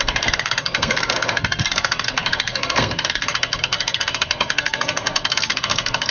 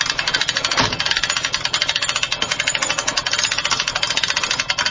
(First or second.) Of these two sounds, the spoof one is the first